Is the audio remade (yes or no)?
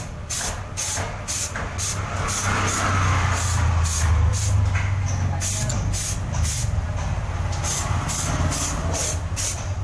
no